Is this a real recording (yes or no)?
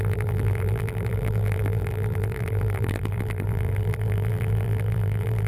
no